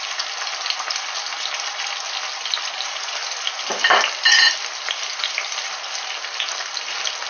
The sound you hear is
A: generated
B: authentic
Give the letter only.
B